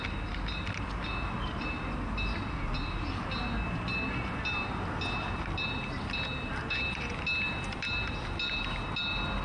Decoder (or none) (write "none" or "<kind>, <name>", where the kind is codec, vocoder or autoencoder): none